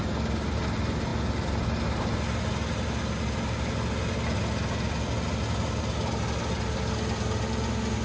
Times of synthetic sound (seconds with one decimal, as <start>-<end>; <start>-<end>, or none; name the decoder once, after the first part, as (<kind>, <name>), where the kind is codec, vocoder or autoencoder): none